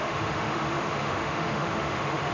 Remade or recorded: remade